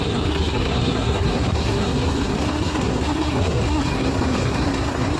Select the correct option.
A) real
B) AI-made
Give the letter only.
B